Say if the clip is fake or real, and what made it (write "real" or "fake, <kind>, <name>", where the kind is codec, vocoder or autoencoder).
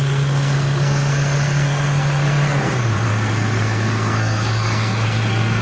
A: fake, codec, SNAC